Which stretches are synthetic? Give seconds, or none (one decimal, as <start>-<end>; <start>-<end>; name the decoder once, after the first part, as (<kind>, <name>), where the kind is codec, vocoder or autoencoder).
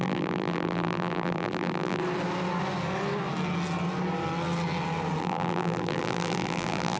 0.0-2.0 (vocoder, BigVGAN v2); 5.2-7.0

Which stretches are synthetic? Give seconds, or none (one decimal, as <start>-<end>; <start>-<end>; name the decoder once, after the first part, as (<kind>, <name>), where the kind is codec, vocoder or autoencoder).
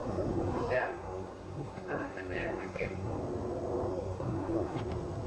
0.0-3.2 (codec, SNAC); 3.9-4.8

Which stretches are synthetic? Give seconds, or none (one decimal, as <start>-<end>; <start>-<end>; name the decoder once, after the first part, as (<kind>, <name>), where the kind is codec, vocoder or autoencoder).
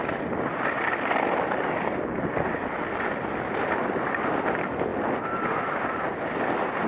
none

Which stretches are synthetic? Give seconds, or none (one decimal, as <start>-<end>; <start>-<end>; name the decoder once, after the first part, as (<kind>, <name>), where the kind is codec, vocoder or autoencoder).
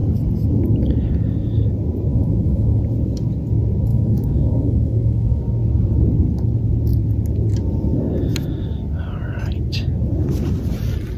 2.1-2.8 (autoencoder, DAC-VAE); 3.9-5.4